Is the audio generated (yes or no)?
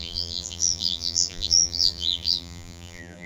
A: yes